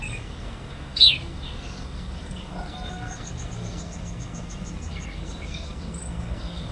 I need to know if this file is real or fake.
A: fake